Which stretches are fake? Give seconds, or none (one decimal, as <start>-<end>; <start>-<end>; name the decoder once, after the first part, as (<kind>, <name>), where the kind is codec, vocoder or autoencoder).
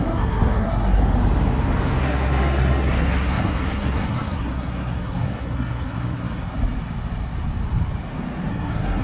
0.0-1.0 (codec, SNAC); 2.0-6.5; 8.5-9.0